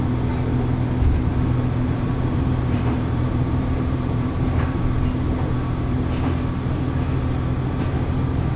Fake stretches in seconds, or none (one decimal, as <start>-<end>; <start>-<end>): 1.6-4.8